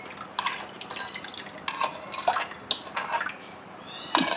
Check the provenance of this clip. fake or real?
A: real